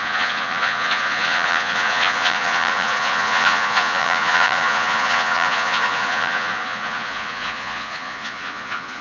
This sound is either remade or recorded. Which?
remade